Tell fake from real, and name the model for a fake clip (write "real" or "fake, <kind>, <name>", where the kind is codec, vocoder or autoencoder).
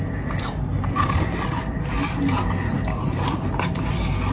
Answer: real